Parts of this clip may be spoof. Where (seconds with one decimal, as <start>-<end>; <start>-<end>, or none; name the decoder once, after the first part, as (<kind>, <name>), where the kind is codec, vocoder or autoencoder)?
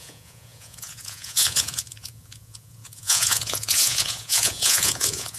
0.0-5.4 (vocoder, Vocos)